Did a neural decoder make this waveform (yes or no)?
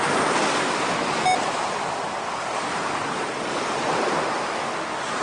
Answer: no